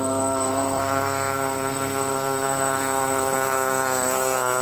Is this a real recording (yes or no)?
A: no